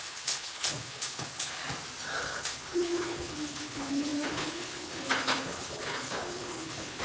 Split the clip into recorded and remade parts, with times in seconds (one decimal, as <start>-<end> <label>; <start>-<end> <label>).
0.0-1.6 remade; 1.6-2.2 recorded; 2.2-7.0 remade